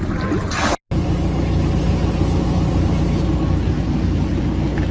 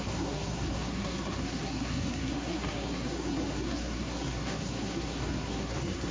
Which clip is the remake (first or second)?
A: second